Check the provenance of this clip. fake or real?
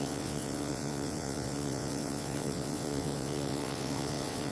fake